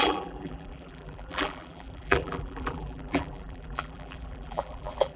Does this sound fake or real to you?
fake